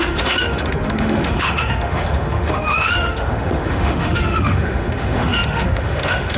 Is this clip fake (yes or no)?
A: yes